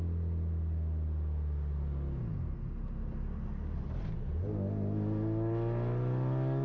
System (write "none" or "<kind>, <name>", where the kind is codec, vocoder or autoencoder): none